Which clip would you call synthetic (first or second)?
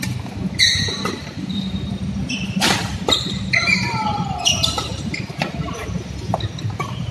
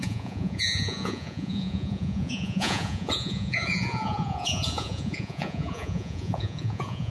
second